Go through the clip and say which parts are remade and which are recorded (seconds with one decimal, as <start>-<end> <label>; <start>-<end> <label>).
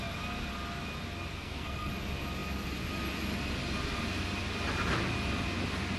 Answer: 0.0-1.3 recorded; 1.3-1.9 remade; 1.9-6.0 recorded